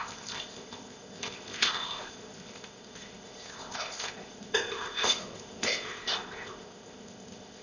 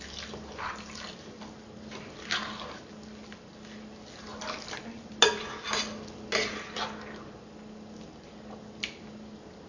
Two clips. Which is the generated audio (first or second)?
first